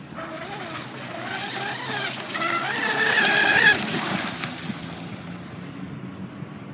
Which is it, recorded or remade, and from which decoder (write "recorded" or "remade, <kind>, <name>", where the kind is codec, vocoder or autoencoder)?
recorded